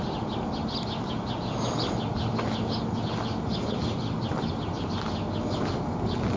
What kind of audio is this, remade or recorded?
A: recorded